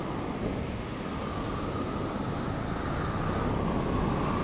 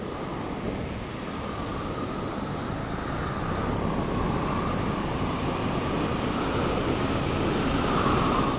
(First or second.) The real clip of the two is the first